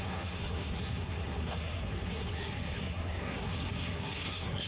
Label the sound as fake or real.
fake